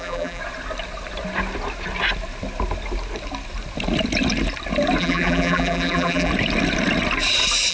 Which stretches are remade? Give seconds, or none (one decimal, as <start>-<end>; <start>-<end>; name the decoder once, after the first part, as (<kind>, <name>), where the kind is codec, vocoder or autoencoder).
0.0-0.4 (vocoder, BigVGAN v2); 5.0-6.3